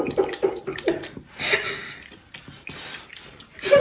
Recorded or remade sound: recorded